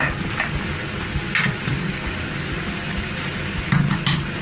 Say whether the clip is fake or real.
real